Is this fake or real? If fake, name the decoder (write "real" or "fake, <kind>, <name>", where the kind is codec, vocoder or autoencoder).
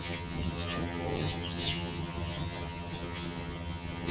fake, vocoder, HiFi-GAN